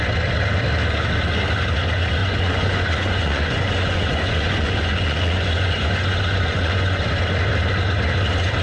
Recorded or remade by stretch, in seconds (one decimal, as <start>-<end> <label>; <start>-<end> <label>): 0.0-2.2 recorded; 2.2-7.0 remade; 7.0-8.6 recorded